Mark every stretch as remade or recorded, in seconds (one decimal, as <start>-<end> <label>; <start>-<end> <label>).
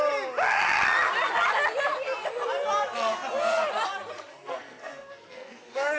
0.0-4.3 recorded; 4.3-6.0 remade